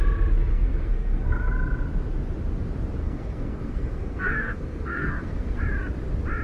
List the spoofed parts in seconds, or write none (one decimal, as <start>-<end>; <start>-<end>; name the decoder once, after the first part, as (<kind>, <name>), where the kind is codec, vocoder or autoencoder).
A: 0.5-1.5 (codec, SNAC); 3.0-5.6